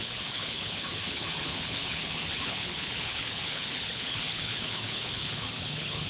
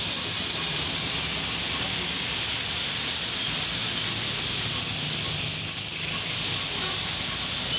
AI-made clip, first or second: first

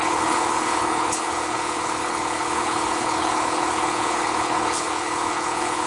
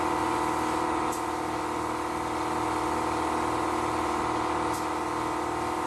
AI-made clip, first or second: first